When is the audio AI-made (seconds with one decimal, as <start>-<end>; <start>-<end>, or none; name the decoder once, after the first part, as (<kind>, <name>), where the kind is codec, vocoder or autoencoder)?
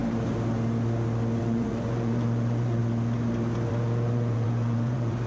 1.4-2.8 (vocoder, Vocos); 3.7-5.3